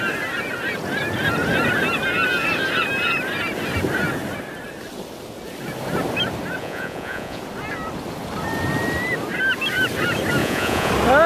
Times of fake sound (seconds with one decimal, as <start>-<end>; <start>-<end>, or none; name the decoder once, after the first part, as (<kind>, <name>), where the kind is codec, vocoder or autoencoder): 6.6-7.4 (vocoder, Vocos); 10.4-10.9